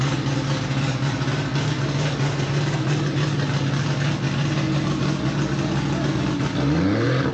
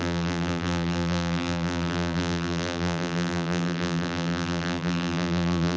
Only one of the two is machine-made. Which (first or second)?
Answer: second